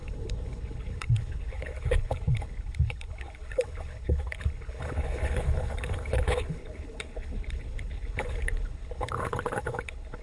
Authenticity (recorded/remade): remade